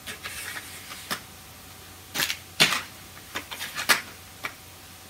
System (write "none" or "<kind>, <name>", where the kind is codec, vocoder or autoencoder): none